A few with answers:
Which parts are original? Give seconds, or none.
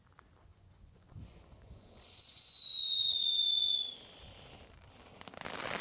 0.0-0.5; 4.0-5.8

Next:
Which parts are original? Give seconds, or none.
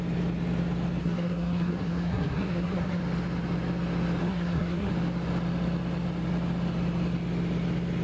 0.0-1.0; 3.0-4.2; 4.9-8.0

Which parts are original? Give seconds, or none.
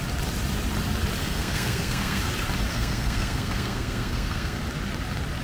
0.0-1.2; 2.3-2.7; 4.6-5.4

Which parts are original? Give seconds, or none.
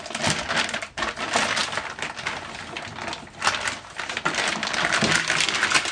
0.0-5.9